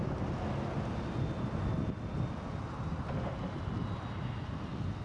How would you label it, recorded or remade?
recorded